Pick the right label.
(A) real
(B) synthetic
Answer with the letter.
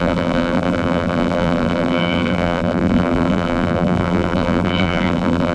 B